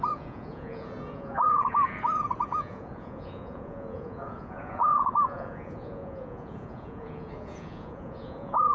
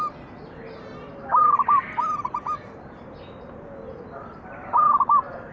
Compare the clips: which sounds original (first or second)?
second